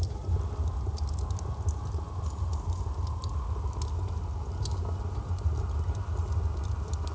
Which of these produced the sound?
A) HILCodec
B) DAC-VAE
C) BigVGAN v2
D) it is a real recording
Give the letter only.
D